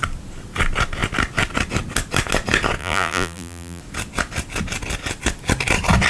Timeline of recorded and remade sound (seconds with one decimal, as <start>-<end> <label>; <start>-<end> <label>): 0.0-2.8 recorded; 2.8-3.8 remade; 3.8-6.1 recorded